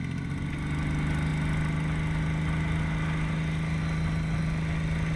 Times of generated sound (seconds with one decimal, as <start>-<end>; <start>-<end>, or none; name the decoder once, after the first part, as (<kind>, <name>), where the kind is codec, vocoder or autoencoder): none